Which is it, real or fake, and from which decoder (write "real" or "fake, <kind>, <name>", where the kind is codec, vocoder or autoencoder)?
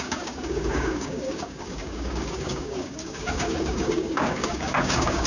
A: fake, codec, DAC